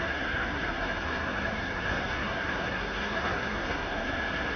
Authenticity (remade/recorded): remade